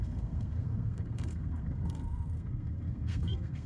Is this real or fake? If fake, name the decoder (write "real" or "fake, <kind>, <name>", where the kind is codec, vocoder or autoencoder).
fake, codec, SNAC